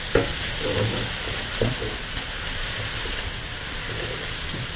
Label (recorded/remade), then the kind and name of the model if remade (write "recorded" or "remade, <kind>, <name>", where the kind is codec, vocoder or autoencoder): recorded